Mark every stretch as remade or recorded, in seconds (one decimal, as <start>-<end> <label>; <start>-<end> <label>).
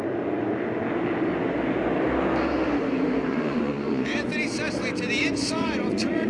0.0-3.3 recorded; 3.3-4.3 remade; 4.3-5.2 recorded; 5.2-6.3 remade